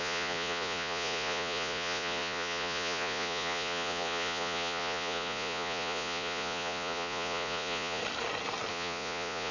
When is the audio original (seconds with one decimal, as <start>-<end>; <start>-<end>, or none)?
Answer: 8.0-8.7